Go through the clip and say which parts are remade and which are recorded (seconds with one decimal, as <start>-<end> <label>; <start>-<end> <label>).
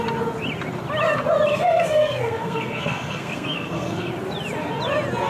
0.0-1.5 recorded; 1.5-4.1 remade; 4.1-5.3 recorded